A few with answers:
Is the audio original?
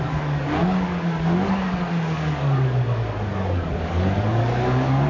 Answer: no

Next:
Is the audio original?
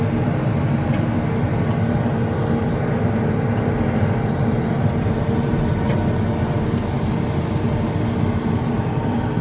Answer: yes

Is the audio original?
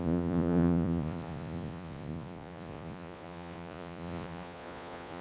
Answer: no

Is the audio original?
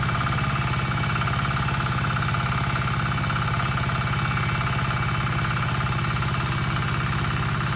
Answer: yes